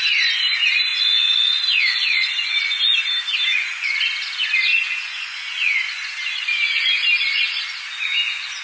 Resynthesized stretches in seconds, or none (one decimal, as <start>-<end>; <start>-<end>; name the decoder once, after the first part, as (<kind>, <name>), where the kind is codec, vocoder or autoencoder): 0.9-2.8 (vocoder, Vocos); 3.5-4.1; 4.7-6.8